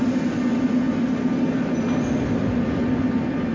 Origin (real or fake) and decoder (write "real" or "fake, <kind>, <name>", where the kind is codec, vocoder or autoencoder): real